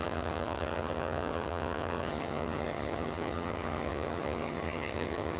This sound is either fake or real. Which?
fake